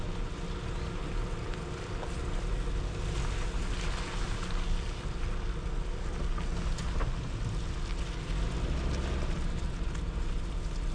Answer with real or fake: real